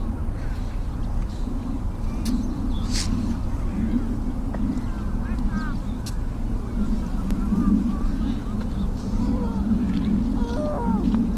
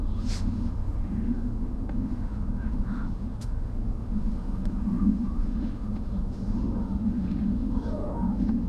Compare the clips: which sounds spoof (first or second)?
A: second